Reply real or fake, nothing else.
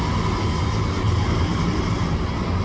real